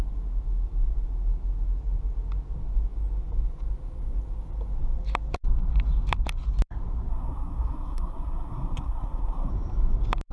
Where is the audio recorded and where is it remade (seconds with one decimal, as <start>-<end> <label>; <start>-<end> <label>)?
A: 0.0-7.1 recorded; 7.1-9.5 remade; 9.5-10.3 recorded

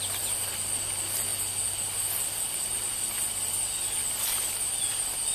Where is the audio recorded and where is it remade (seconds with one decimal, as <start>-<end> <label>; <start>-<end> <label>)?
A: 0.0-5.3 recorded

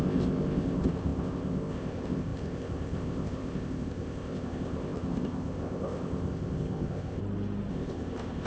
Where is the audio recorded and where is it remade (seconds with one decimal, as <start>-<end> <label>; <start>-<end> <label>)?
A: 0.0-7.2 remade; 7.2-7.7 recorded; 7.7-8.5 remade

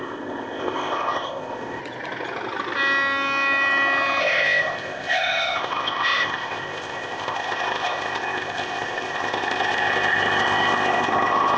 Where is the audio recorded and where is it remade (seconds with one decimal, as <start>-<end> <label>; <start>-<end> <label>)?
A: 0.0-1.8 remade; 1.8-4.2 recorded; 4.2-11.6 remade

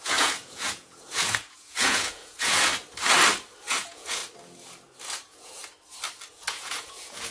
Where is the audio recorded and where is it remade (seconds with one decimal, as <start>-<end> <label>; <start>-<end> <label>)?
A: 0.0-2.7 remade; 2.7-3.7 recorded; 3.7-4.2 remade; 4.2-5.0 recorded; 5.0-5.6 remade; 5.6-6.3 recorded; 6.3-7.3 remade

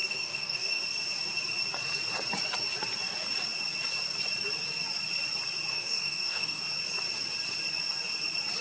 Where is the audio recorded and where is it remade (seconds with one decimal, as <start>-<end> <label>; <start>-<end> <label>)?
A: 0.0-0.8 remade; 0.8-5.7 recorded; 5.7-6.6 remade; 6.6-8.6 recorded